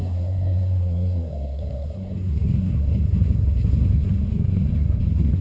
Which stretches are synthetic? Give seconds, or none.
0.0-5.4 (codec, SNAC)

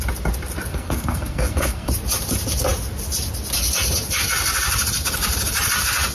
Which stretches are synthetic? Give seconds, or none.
0.7-1.9 (codec, SNAC)

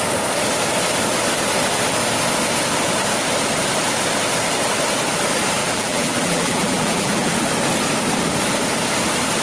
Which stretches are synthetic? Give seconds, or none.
5.6-7.3 (vocoder, BigVGAN v2)

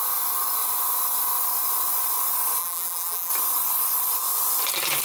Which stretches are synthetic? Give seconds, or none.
2.6-3.3 (vocoder, BigVGAN v2)

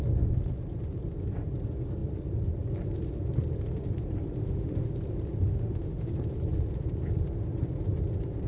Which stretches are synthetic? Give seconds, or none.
4.4-4.9 (autoencoder, DAC-VAE); 5.5-6.1

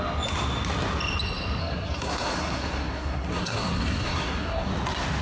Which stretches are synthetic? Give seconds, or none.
1.6-4.7 (codec, SNAC)

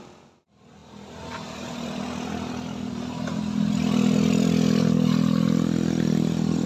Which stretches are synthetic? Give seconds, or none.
none